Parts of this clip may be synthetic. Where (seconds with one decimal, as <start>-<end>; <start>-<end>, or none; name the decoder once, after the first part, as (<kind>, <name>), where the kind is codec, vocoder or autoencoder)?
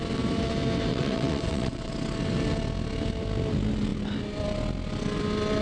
0.9-1.9 (vocoder, WaveNeXt)